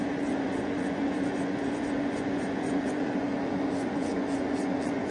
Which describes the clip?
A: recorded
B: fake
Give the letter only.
B